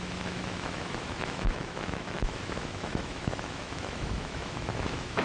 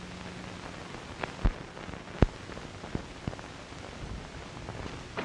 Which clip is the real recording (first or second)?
second